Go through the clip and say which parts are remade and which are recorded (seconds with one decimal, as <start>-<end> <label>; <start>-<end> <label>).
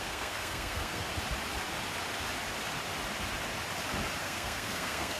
0.0-1.1 remade; 1.1-4.2 recorded; 4.2-5.2 remade